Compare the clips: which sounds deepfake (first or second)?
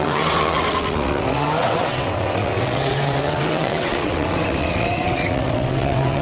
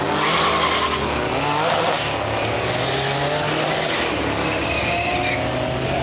first